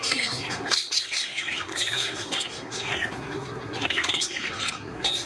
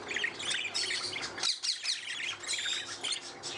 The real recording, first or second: second